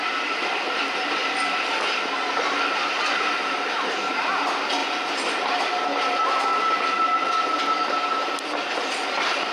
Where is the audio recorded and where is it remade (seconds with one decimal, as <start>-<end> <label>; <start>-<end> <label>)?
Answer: 0.0-9.5 recorded